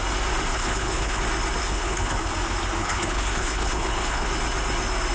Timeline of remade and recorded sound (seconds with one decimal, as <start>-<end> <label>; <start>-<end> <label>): 0.0-0.5 recorded; 0.5-1.2 remade; 1.2-1.6 recorded; 1.6-2.3 remade; 2.3-2.8 recorded; 2.8-4.3 remade; 4.3-5.1 recorded